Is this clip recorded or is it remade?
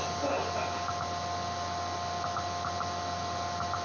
recorded